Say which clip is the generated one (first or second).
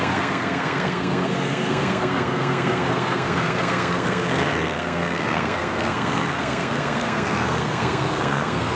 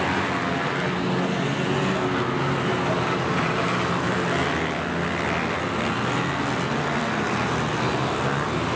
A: first